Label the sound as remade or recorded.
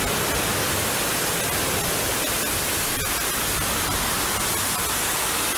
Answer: recorded